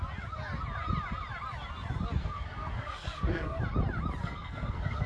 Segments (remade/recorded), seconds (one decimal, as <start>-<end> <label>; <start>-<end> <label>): 0.0-2.2 recorded; 2.2-3.6 remade; 3.6-4.2 recorded; 4.2-5.1 remade